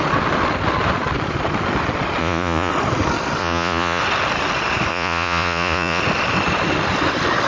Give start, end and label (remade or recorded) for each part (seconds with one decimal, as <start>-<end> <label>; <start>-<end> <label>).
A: 0.0-2.2 recorded; 2.2-2.7 remade; 2.7-3.4 recorded; 3.4-4.0 remade; 4.0-4.9 recorded; 4.9-6.0 remade; 6.0-7.5 recorded